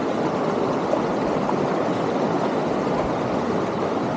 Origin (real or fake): real